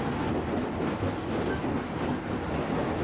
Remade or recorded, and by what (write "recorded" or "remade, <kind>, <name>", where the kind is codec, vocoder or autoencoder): recorded